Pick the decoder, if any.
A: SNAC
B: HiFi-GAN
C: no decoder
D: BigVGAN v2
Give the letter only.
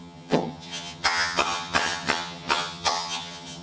B